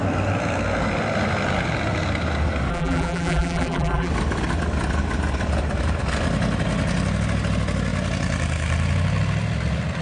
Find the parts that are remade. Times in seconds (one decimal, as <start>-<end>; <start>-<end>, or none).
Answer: 2.7-4.1